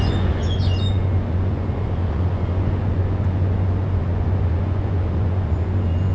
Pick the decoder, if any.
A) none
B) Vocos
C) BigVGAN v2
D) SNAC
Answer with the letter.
B